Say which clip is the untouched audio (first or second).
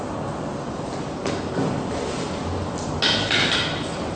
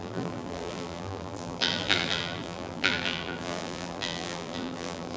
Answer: first